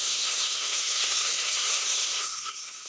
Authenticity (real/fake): fake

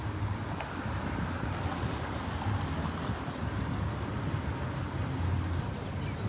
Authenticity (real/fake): real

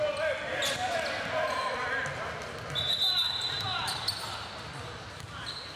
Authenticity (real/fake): real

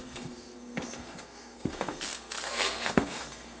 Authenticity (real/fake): fake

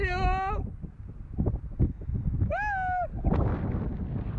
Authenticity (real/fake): real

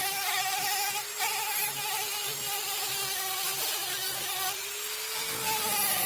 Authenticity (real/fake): real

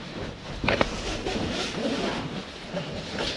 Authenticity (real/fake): fake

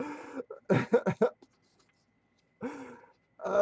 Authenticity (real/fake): real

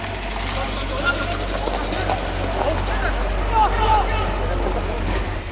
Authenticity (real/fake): real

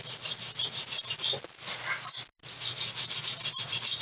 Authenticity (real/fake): real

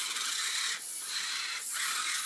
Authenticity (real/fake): real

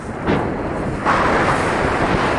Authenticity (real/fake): real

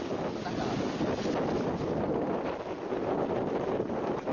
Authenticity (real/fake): real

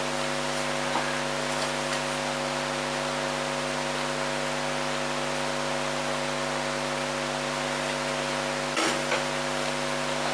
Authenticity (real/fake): real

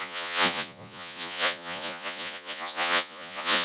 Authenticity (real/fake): fake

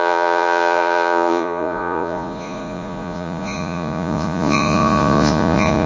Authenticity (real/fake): fake